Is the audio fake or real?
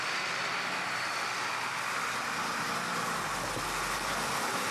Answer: real